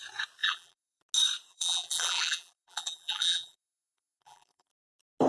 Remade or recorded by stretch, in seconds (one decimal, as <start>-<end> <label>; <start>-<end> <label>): 0.0-0.4 recorded; 0.4-1.0 remade; 1.0-1.5 recorded; 1.5-4.7 remade; 4.7-5.3 recorded